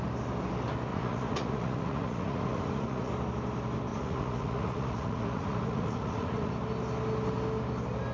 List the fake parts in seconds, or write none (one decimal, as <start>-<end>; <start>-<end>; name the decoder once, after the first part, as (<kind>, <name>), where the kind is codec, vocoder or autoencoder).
0.9-3.1 (vocoder, Vocos); 3.9-6.5